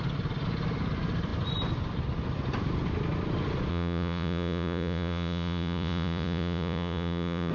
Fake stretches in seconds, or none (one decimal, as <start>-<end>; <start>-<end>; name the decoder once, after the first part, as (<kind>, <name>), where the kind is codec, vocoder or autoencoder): 3.7-7.5 (vocoder, Vocos)